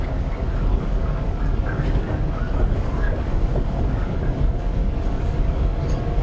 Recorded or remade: remade